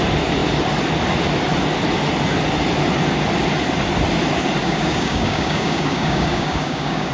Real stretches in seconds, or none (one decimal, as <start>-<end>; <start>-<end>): 0.0-4.6